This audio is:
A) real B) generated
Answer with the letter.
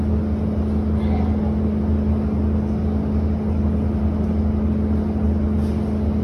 A